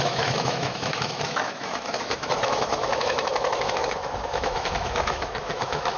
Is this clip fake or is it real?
fake